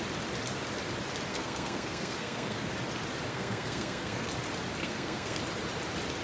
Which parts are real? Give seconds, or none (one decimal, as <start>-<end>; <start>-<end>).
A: 0.0-1.3; 2.7-3.3; 4.3-4.8; 5.4-6.2